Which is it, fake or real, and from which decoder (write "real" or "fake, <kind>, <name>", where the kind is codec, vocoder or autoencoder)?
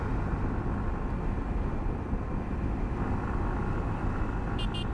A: real